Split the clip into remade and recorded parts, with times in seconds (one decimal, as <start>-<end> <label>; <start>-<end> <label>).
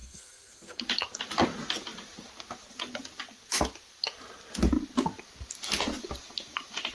0.0-0.8 remade; 0.8-6.9 recorded